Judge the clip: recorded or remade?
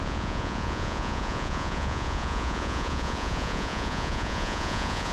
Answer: remade